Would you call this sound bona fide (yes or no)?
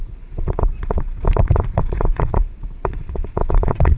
no